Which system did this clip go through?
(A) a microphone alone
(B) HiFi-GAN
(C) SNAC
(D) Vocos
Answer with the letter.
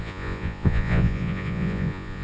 D